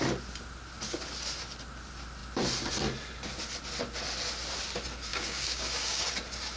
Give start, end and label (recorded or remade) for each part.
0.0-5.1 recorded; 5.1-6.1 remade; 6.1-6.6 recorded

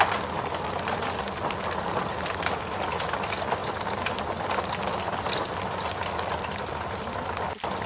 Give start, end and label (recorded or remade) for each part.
0.0-7.9 recorded

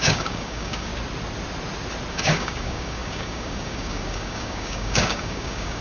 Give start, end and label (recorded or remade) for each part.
0.0-0.9 remade; 0.9-2.1 recorded; 2.1-5.8 remade

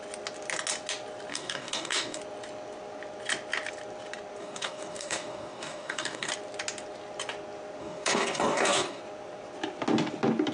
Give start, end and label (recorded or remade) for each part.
0.0-1.3 recorded; 1.3-2.2 remade; 2.2-4.4 recorded; 4.4-6.3 remade; 6.3-7.8 recorded; 7.8-9.0 remade; 9.0-10.5 recorded